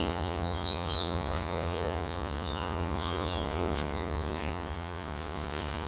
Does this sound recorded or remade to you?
remade